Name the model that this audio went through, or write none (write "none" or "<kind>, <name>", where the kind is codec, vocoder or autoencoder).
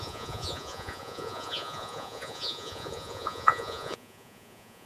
vocoder, Vocos